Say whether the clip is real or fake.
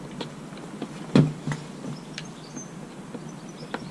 real